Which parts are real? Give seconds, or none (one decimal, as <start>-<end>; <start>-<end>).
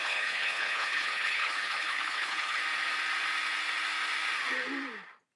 2.6-5.4